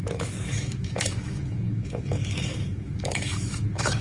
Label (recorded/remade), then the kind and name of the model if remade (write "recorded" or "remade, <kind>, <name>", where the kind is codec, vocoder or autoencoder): remade, autoencoder, DAC-VAE